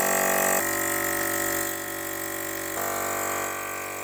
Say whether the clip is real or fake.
real